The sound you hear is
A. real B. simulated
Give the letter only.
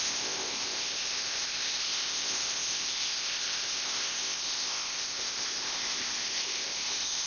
B